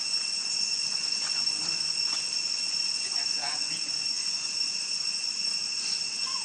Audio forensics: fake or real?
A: fake